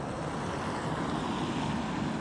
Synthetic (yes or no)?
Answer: no